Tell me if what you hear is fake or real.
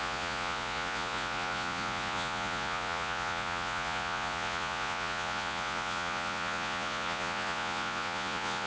fake